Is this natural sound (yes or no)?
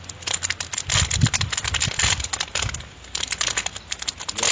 yes